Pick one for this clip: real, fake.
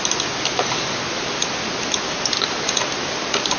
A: real